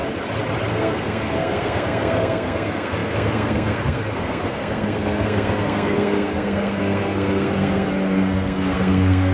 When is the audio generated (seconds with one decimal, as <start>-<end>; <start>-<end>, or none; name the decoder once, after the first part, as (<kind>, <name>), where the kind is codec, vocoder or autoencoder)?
0.7-9.3 (codec, SNAC)